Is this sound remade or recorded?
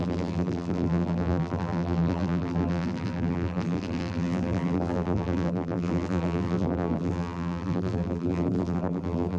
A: remade